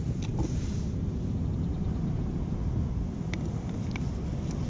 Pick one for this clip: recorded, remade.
recorded